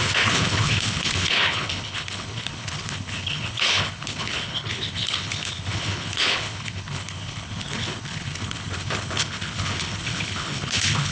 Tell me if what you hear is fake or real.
fake